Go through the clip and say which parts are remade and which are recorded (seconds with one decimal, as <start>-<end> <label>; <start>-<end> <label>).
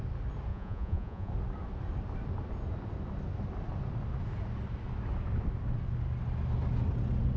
0.0-0.5 recorded; 0.5-1.3 remade; 1.3-7.4 recorded